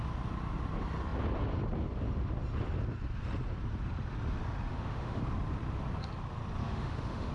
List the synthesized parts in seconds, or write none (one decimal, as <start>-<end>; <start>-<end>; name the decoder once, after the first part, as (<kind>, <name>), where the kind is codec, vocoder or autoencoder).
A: 4.7-5.2 (autoencoder, DAC-VAE); 6.6-7.3

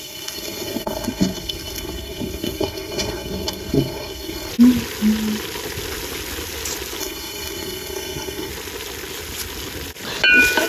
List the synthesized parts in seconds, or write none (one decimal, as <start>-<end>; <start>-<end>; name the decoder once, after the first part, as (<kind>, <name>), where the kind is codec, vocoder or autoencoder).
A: 0.0-4.5 (codec, SNAC); 7.0-8.5

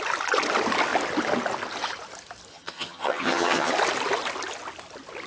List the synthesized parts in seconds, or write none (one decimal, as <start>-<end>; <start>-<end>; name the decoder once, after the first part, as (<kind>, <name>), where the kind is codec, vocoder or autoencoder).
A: 2.5-3.7 (vocoder, HiFi-GAN)